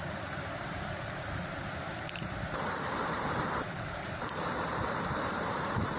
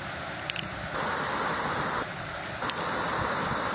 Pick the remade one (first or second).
first